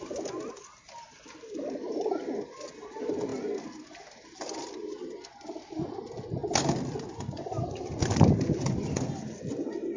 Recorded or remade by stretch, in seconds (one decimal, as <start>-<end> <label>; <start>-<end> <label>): 0.0-10.0 recorded